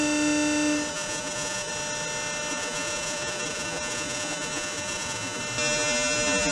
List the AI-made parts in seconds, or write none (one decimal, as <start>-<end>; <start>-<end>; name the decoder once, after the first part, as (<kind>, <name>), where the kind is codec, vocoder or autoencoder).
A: 0.9-1.7 (vocoder, Vocos); 2.5-5.4